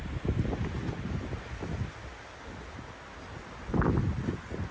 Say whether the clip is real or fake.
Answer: real